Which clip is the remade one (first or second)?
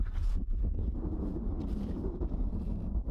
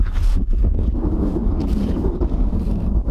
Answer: second